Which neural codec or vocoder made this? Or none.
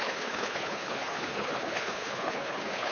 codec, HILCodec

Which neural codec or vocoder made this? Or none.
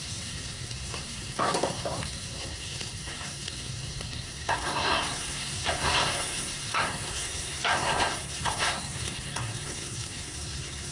codec, SNAC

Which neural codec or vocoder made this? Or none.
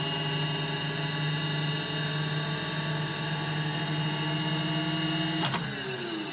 none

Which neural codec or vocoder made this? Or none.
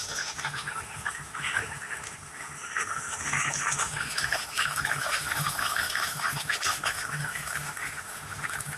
autoencoder, DAC-VAE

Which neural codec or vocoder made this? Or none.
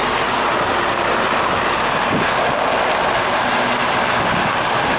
none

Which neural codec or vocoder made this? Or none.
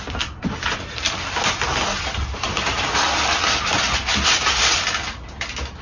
none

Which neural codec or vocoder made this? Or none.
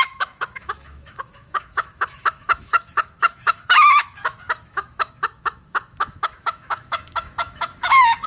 autoencoder, DAC-VAE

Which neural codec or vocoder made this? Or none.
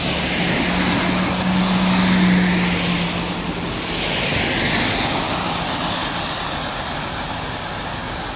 none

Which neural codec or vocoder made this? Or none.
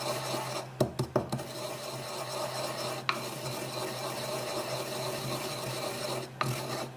none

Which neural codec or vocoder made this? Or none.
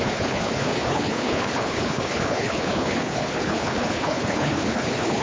codec, HILCodec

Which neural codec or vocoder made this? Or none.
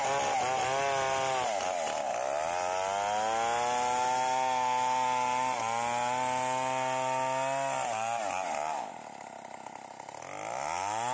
none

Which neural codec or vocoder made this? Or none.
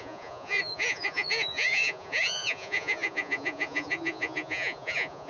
vocoder, Vocos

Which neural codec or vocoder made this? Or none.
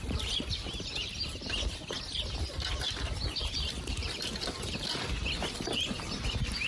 none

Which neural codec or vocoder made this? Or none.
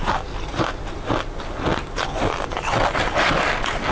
none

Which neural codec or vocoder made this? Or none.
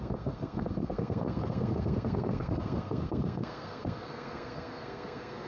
codec, SNAC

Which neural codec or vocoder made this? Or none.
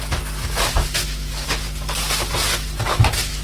none